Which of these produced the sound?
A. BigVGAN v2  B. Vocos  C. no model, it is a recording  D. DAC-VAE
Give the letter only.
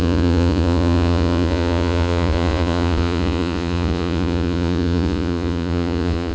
B